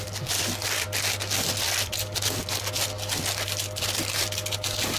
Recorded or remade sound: recorded